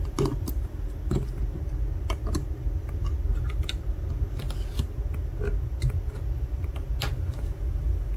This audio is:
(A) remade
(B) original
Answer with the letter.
B